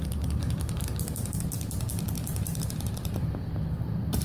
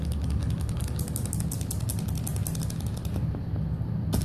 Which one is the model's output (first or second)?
first